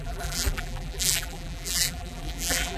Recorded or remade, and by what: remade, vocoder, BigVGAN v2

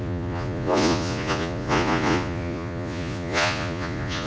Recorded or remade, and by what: remade, vocoder, Vocos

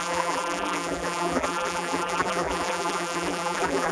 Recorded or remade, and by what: remade, vocoder, BigVGAN v2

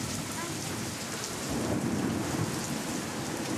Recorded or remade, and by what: recorded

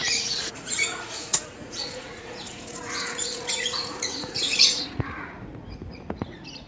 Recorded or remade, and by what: remade, vocoder, Vocos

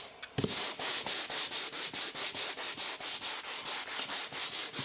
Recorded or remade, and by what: recorded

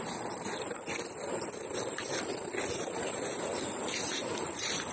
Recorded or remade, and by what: remade, vocoder, BigVGAN v2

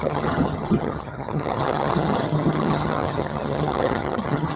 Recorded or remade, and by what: remade, vocoder, HiFi-GAN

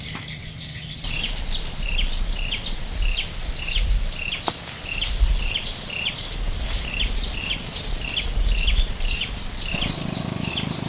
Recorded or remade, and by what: recorded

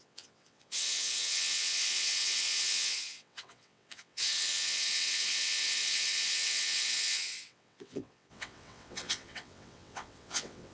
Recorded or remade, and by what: remade, vocoder, WaveNeXt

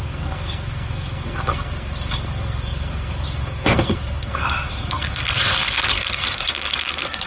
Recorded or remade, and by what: remade, codec, SNAC